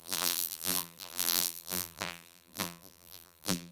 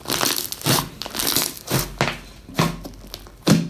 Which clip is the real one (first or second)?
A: second